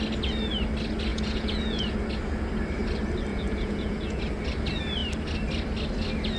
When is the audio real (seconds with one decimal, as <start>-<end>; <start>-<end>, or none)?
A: 0.0-1.1; 1.9-3.3; 4.2-6.4